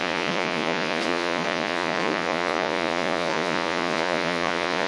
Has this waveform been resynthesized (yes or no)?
yes